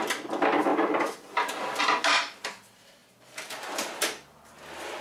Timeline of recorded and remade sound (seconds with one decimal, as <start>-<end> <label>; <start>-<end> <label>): 0.0-3.0 recorded; 3.0-4.0 remade; 4.0-5.0 recorded